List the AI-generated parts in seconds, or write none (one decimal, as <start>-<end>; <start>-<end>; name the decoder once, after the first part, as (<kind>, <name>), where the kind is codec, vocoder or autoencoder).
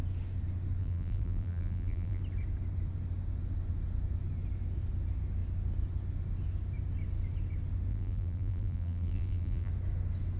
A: 0.8-2.2 (vocoder, BigVGAN v2); 7.9-9.7